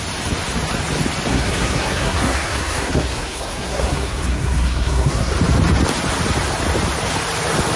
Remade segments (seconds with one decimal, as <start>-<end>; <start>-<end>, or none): 1.3-5.3